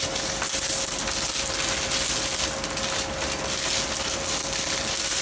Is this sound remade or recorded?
recorded